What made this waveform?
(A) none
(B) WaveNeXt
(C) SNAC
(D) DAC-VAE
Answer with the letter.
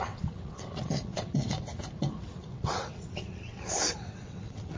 B